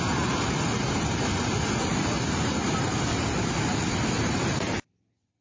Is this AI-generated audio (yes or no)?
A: no